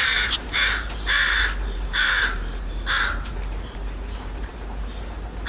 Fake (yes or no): yes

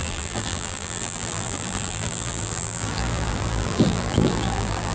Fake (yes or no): yes